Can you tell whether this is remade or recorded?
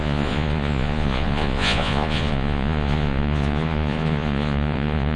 remade